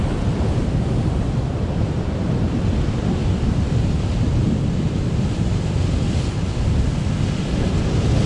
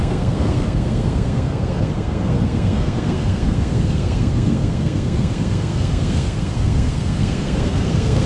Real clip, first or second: first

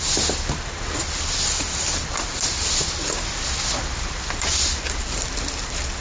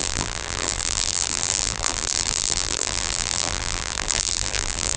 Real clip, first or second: first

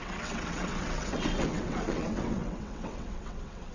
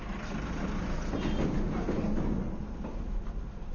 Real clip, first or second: second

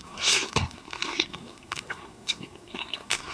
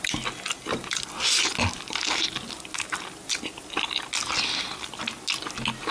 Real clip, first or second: second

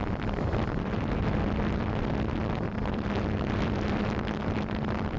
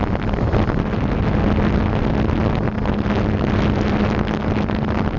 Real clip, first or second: second